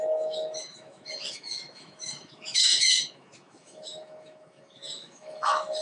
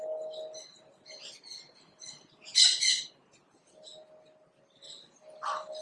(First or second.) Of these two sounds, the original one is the second